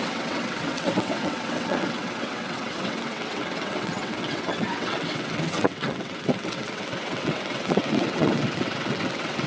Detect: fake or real fake